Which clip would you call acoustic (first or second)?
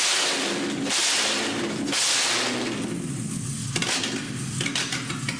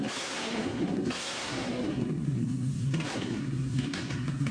first